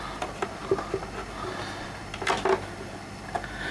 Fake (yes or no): no